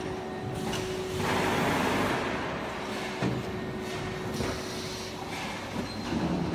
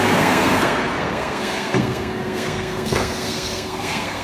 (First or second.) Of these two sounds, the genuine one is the first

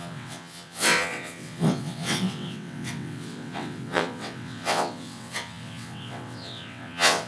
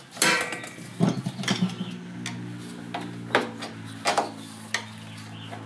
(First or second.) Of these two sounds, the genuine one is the second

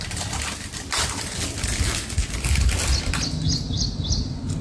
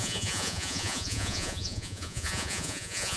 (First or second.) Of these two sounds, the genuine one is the first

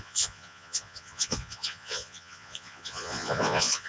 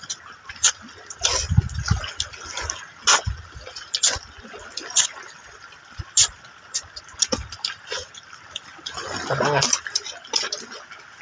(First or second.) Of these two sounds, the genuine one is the second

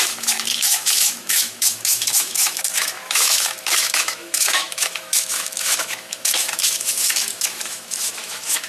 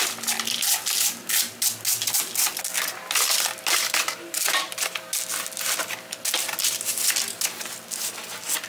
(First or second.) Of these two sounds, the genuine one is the second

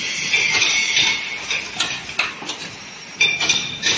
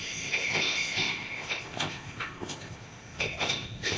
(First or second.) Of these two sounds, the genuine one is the first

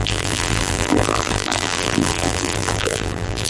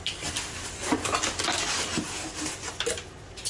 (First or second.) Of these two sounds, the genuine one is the second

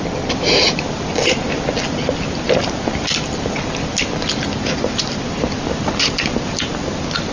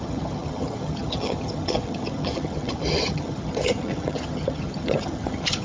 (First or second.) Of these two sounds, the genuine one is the first